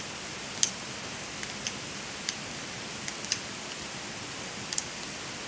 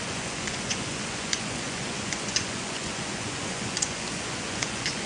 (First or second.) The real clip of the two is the first